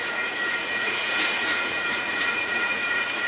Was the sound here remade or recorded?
remade